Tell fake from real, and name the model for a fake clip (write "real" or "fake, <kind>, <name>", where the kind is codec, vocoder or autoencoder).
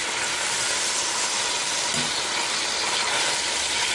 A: real